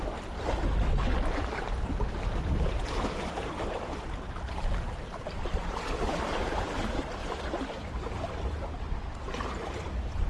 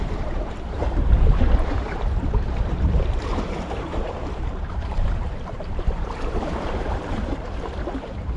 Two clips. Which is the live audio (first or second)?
first